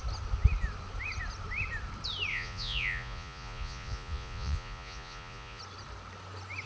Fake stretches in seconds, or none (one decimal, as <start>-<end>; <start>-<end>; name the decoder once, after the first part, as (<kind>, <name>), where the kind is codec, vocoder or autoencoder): 2.3-5.6 (vocoder, Vocos)